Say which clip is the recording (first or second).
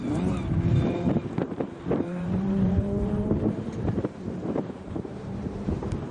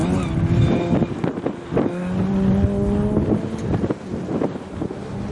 second